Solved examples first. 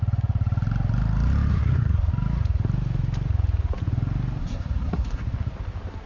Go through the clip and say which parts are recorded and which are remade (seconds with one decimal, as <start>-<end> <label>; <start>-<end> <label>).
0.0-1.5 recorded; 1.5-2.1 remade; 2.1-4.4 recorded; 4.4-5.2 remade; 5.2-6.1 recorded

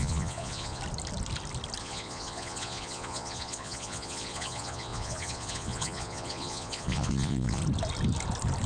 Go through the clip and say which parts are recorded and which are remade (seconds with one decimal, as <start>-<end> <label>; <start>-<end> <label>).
0.0-0.8 remade; 0.8-1.8 recorded; 1.8-7.6 remade; 7.6-8.7 recorded

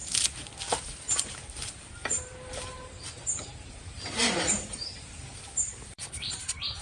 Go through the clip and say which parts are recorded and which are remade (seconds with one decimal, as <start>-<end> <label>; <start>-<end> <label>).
0.0-0.8 recorded; 0.8-6.8 remade

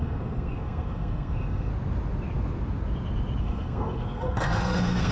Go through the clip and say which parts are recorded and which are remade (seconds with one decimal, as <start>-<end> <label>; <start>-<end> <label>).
0.0-1.7 remade; 1.7-3.4 recorded; 3.4-5.1 remade

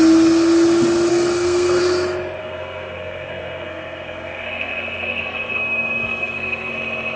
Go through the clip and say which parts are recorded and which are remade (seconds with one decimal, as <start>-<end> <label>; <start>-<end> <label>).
0.0-1.1 recorded; 1.1-1.8 remade; 1.8-2.4 recorded; 2.4-6.7 remade; 6.7-7.2 recorded